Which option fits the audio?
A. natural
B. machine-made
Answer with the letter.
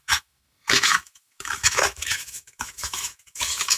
B